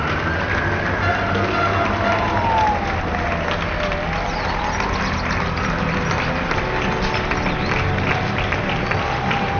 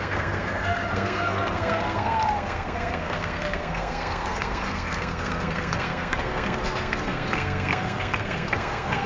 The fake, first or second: second